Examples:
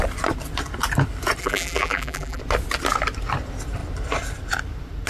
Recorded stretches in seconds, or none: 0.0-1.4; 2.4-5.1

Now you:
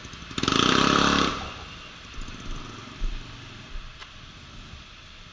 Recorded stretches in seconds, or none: 2.6-5.3